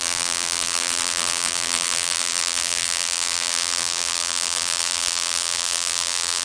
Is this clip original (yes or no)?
no